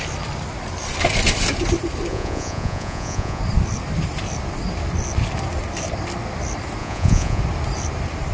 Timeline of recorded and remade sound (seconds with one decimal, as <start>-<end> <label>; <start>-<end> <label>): 0.0-2.1 recorded; 2.1-3.4 remade; 3.4-6.8 recorded; 6.8-7.4 remade; 7.4-8.3 recorded